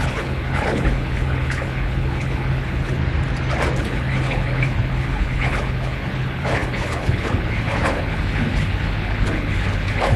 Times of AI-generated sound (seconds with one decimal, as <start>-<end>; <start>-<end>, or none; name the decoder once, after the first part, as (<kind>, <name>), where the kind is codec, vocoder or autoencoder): 0.0-3.0 (codec, HILCodec); 3.8-10.2